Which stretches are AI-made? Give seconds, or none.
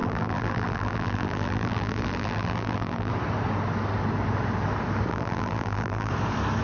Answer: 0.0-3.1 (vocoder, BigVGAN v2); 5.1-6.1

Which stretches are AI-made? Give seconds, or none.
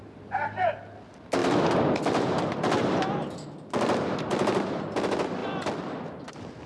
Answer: none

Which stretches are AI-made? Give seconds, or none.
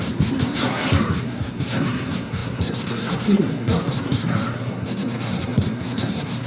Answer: 0.0-6.5 (codec, SNAC)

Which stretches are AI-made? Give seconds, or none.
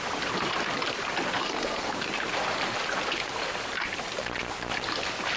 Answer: 1.4-1.9 (codec, SNAC)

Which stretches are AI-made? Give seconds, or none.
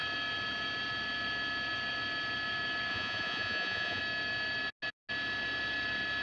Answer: 2.9-4.0 (vocoder, Vocos)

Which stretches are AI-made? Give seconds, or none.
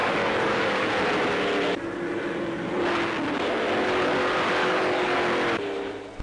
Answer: 0.0-0.9 (codec, DAC); 4.6-5.2